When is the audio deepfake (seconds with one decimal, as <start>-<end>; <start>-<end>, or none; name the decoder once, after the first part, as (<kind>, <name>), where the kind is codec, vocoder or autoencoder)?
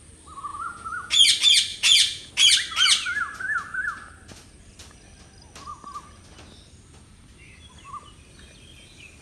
0.5-1.1 (vocoder, Vocos); 1.7-2.3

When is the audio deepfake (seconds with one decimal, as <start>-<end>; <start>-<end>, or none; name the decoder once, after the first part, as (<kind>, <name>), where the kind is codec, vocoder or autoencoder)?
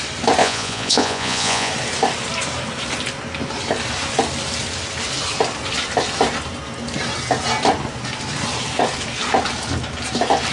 0.4-1.7 (vocoder, Vocos)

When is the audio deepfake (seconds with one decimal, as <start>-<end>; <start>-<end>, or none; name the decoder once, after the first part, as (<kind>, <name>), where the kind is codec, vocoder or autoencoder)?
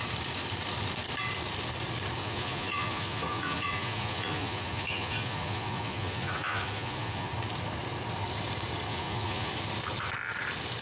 2.2-7.3 (vocoder, Vocos); 8.9-9.5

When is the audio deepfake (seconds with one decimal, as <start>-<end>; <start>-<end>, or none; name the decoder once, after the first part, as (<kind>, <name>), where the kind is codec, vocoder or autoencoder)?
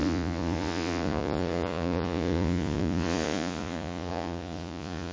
0.0-5.1 (vocoder, Vocos)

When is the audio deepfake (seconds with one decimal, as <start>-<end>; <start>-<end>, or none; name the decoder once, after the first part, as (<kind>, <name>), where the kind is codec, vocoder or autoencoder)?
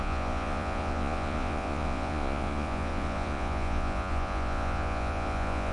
0.0-5.7 (vocoder, Vocos)